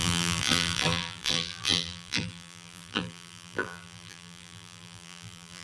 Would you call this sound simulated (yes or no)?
yes